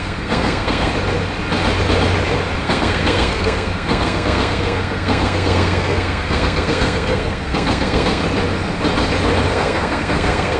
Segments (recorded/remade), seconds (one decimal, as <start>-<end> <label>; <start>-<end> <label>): 0.0-0.9 remade; 0.9-2.6 recorded; 2.6-8.2 remade; 8.2-9.5 recorded; 9.5-10.6 remade